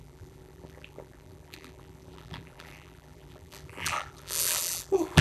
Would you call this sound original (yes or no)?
no